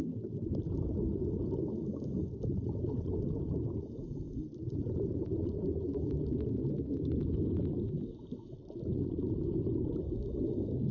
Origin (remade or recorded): recorded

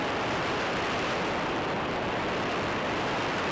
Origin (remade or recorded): recorded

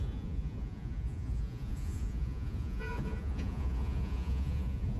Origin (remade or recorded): remade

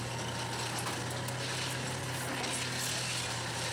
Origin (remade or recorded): recorded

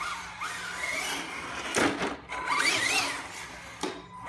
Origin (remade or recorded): recorded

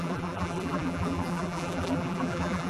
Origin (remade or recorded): remade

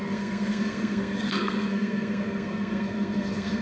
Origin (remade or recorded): remade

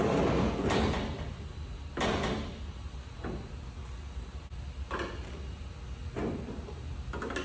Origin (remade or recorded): recorded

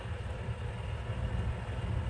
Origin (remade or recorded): recorded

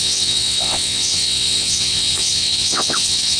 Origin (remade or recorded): remade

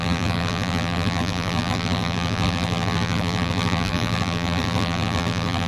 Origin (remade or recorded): remade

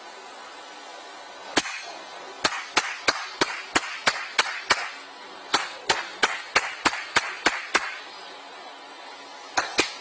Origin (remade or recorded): recorded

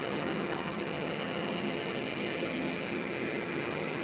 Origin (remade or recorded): remade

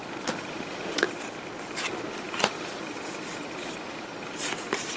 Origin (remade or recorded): recorded